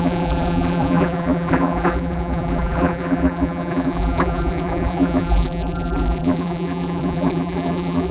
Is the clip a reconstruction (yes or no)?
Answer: yes